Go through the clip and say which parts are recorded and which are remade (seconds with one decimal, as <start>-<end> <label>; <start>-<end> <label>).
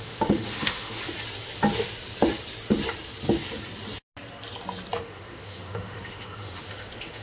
0.0-1.0 remade; 1.0-5.0 recorded; 5.0-7.2 remade